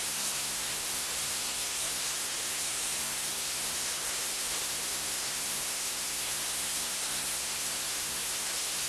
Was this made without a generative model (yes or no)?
no